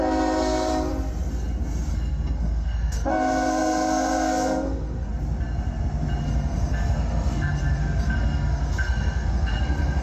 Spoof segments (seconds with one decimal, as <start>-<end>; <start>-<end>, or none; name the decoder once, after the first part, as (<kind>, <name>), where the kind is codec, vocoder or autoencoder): 0.0-0.7 (codec, SNAC); 1.9-5.1; 6.2-10.0